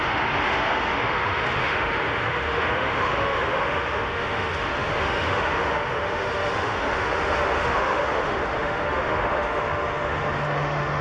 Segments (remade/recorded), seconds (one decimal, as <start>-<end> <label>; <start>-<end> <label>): 0.0-11.0 remade